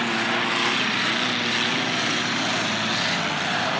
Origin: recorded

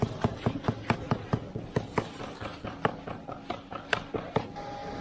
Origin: recorded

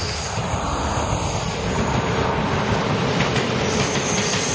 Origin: recorded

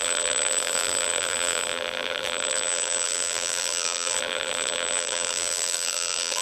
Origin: remade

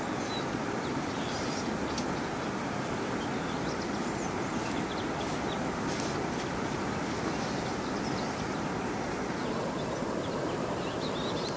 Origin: recorded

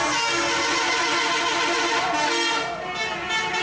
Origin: recorded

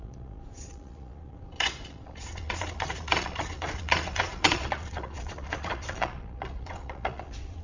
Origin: remade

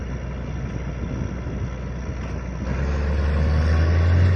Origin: recorded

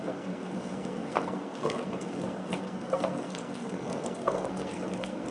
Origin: remade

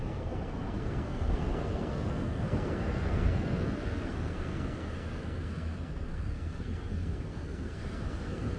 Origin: remade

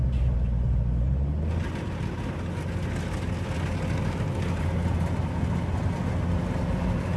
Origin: recorded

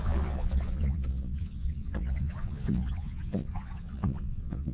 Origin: remade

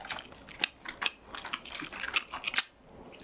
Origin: recorded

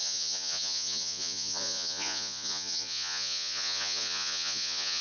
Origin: remade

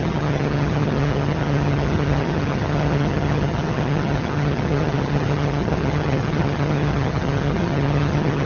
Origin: remade